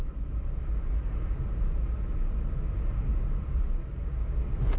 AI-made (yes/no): no